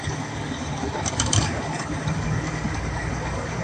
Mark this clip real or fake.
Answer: fake